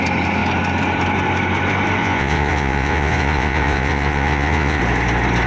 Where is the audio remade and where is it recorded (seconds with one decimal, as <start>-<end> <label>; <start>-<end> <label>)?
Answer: 0.0-2.0 recorded; 2.0-4.8 remade; 4.8-5.5 recorded